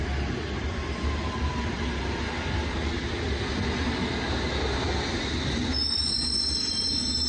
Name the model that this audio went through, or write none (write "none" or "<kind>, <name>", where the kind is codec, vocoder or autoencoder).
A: none